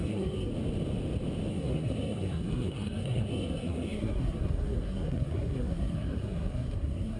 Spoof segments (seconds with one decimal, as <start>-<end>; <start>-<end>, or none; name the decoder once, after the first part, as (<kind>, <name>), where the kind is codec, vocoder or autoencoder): 0.0-0.5 (codec, SNAC); 1.5-7.2